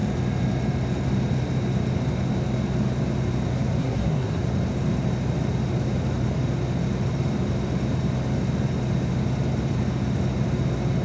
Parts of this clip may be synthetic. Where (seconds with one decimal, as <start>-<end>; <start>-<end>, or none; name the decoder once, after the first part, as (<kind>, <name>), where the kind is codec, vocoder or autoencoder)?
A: 3.8-4.4 (codec, SNAC)